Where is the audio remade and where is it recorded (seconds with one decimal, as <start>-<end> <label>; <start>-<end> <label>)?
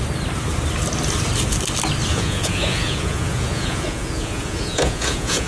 0.0-2.1 recorded; 2.1-5.5 remade